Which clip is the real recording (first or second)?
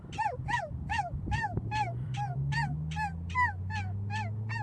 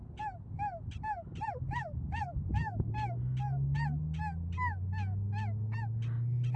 second